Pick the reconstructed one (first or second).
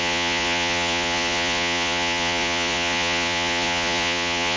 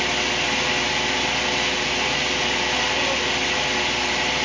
first